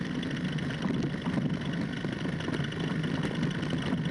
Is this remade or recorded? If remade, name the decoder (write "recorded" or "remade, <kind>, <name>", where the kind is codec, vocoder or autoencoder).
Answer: recorded